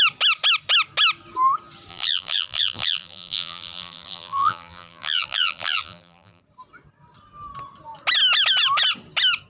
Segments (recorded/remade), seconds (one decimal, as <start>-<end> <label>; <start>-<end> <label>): 0.0-1.9 recorded; 1.9-6.4 remade; 6.4-9.5 recorded